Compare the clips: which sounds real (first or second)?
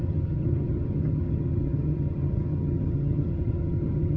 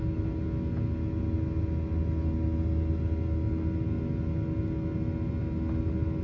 second